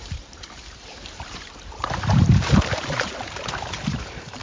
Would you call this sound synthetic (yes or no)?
yes